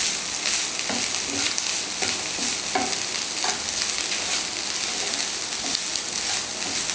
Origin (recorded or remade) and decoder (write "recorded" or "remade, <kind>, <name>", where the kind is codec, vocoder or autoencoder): recorded